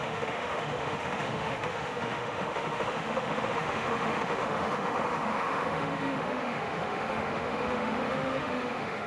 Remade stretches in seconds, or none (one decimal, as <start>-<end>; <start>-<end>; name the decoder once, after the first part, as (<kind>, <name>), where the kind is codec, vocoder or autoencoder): 0.0-9.1 (autoencoder, DAC-VAE)